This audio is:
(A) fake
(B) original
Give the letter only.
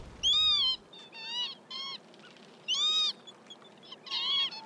B